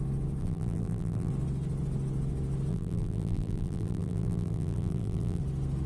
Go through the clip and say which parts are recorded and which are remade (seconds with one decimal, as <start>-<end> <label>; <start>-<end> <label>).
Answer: 0.0-0.4 recorded; 0.4-1.3 remade; 1.3-2.7 recorded; 2.7-5.4 remade; 5.4-5.9 recorded